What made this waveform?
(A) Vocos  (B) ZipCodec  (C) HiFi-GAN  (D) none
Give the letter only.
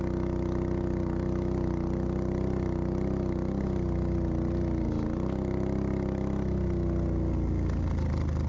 D